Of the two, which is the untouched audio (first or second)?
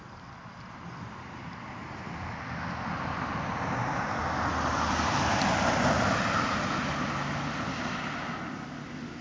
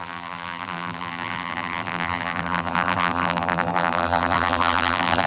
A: first